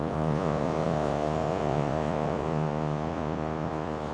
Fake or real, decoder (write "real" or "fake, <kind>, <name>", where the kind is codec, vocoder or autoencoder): fake, vocoder, Vocos